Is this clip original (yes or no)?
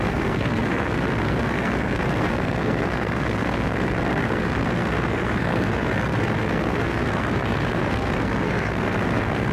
no